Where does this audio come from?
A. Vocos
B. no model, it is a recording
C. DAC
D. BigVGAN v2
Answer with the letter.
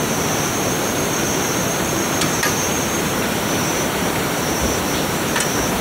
D